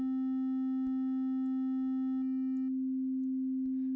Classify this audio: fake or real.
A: real